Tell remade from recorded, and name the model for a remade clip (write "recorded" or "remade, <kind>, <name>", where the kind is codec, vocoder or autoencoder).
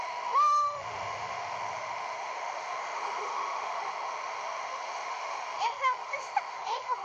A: remade, autoencoder, DAC-VAE